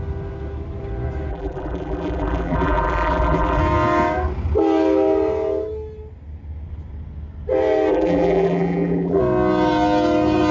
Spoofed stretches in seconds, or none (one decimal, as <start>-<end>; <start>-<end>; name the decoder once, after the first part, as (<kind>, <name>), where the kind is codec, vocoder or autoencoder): 1.3-3.6 (vocoder, BigVGAN v2); 7.9-9.2